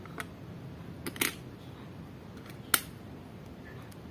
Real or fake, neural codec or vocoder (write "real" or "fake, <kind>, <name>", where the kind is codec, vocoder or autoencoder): real